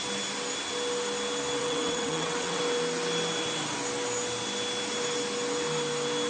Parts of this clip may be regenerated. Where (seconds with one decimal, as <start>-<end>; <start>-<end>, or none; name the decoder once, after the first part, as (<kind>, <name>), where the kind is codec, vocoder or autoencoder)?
1.6-2.6 (vocoder, WaveNeXt)